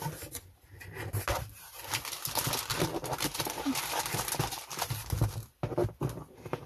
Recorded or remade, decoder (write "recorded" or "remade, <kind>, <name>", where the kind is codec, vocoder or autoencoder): recorded